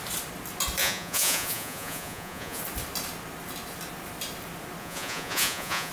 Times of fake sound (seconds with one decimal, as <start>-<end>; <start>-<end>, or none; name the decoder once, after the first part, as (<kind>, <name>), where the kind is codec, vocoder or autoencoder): 0.8-2.6 (vocoder, Vocos); 4.8-5.9